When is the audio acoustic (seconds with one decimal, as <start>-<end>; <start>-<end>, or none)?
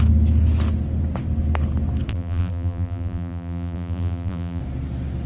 0.0-2.1; 4.6-5.3